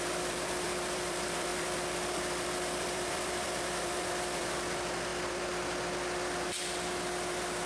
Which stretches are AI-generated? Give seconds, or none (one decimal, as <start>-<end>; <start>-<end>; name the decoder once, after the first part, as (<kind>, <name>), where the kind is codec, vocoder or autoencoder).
0.0-5.1 (vocoder, BigVGAN v2)